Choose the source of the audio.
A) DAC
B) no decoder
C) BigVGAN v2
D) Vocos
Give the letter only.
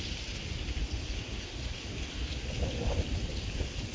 B